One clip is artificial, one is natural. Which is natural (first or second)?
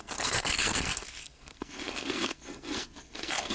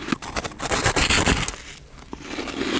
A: second